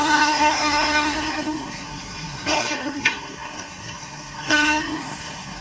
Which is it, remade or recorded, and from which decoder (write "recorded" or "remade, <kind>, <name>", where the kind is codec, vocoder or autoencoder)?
remade, codec, SNAC